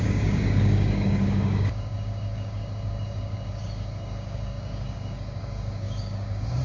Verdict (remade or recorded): remade